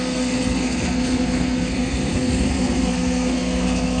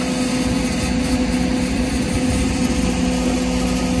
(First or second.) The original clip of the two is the second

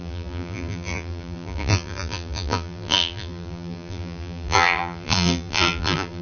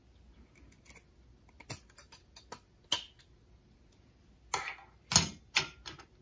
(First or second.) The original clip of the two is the second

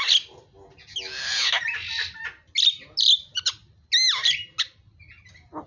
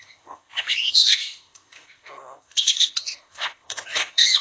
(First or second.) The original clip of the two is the first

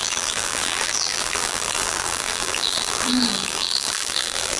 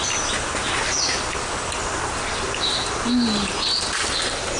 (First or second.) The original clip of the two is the second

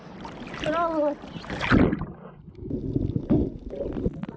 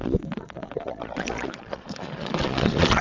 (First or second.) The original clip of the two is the first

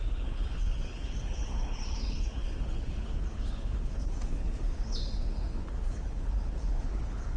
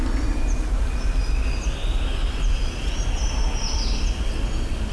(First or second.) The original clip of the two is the second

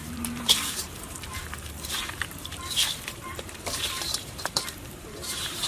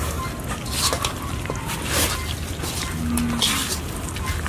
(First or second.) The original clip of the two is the second